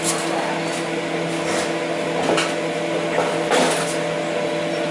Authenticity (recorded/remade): recorded